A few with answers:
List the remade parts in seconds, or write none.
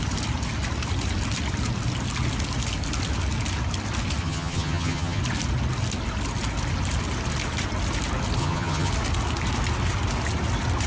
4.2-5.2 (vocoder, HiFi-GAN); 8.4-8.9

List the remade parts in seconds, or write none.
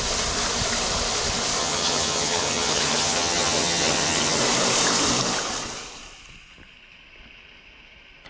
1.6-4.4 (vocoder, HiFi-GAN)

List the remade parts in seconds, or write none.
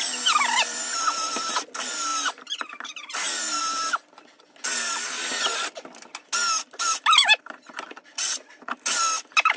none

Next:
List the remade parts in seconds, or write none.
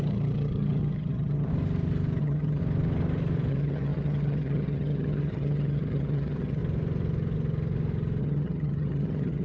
0.0-1.5 (vocoder, HiFi-GAN); 2.2-2.6; 3.5-6.6; 8.2-9.4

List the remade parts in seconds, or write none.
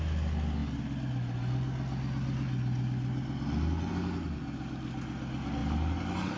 none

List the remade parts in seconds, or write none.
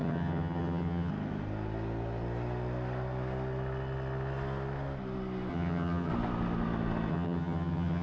0.0-1.1 (vocoder, HiFi-GAN); 5.5-6.1; 7.1-8.0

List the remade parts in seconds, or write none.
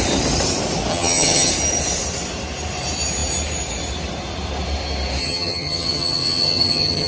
0.9-1.5 (vocoder, HiFi-GAN); 5.2-7.1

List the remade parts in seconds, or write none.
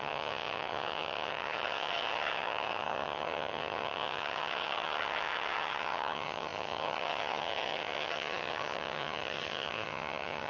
0.0-10.5 (vocoder, HiFi-GAN)